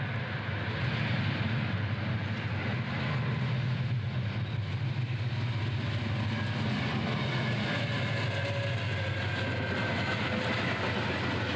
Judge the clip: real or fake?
real